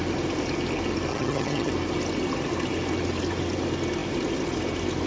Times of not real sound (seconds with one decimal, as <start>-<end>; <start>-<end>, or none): 1.1-1.7